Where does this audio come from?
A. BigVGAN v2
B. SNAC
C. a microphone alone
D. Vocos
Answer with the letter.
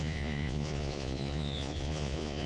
D